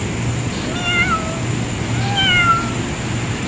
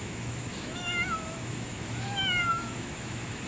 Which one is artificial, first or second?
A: second